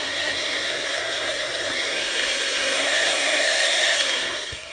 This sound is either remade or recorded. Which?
remade